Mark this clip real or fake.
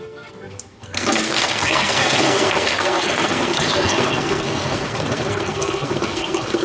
fake